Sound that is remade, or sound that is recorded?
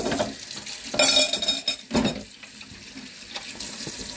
recorded